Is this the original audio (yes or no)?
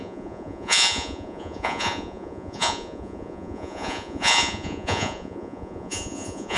no